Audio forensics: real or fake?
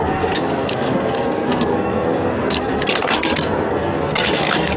fake